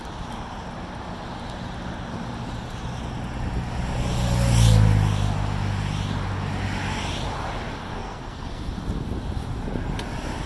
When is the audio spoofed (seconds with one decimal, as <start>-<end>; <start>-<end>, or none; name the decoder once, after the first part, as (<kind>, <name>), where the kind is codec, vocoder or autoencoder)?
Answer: 7.9-8.7 (codec, SNAC)